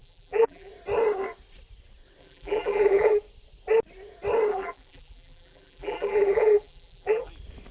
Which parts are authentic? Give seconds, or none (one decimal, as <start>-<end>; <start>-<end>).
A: 0.7-2.2; 3.1-4.5; 7.3-7.7